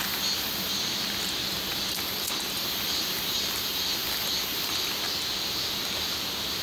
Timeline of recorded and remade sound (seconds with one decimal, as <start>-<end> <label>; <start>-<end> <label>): 0.0-6.6 recorded